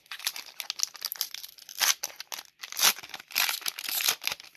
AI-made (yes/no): no